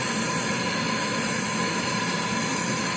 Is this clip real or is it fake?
real